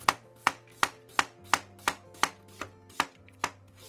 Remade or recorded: recorded